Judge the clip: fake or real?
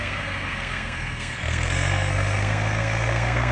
fake